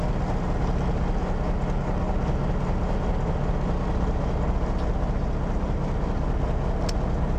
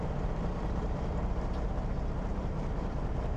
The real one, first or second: first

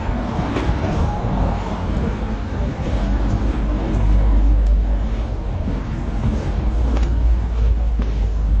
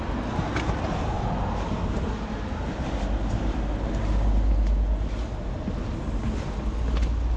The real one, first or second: second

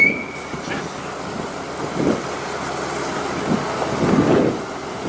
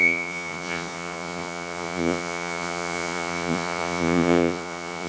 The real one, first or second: first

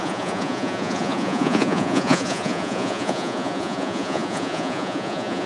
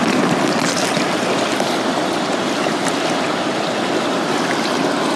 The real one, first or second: second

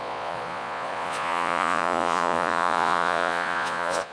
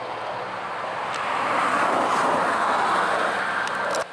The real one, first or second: second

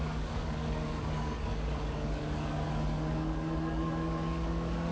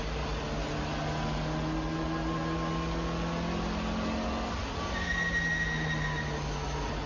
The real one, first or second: second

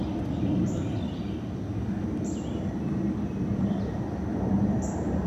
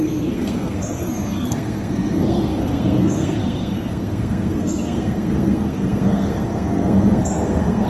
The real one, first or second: first